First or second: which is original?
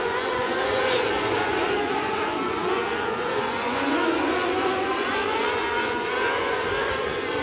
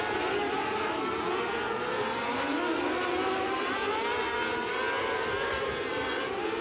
second